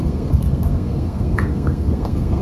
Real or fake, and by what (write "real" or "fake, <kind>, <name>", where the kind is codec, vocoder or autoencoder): fake, codec, SNAC